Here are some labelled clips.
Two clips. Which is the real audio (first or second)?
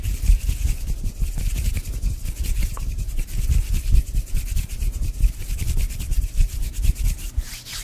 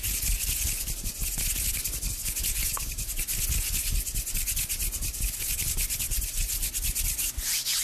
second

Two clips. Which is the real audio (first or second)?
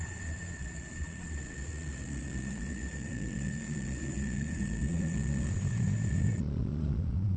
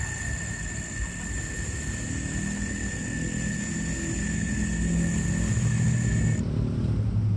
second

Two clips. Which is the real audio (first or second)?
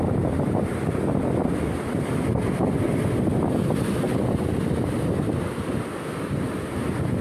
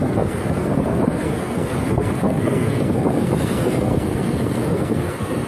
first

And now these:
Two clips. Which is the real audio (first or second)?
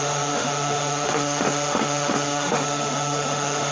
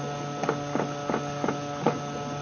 second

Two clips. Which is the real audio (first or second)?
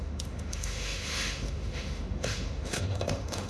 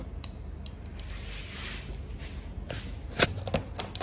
second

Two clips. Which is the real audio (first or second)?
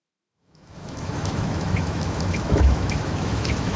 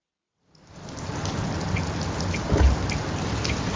second